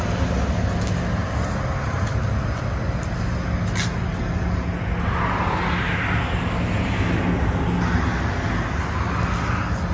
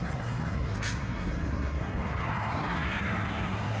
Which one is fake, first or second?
second